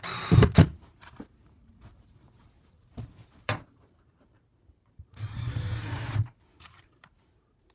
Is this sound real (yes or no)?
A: no